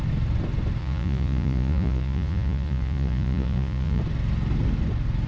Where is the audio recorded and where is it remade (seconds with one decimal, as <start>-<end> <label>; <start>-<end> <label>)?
0.0-0.8 recorded; 0.8-4.0 remade; 4.0-5.3 recorded